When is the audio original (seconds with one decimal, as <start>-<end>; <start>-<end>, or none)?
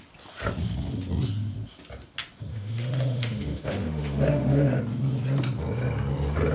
0.0-2.5; 4.8-6.5